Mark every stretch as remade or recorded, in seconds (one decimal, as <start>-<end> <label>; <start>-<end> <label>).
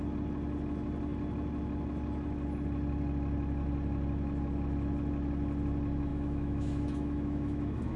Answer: 0.0-6.1 recorded; 6.1-8.0 remade